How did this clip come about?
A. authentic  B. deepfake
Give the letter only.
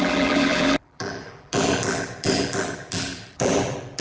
B